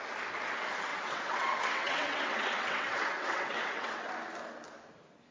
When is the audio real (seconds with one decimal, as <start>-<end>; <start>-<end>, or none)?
0.0-0.9; 4.1-5.3